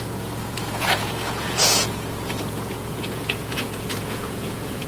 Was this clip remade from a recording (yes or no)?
yes